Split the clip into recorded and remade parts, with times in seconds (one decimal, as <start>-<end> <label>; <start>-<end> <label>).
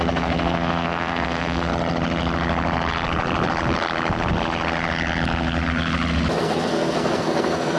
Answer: 0.0-1.7 remade; 1.7-6.4 recorded; 6.4-7.8 remade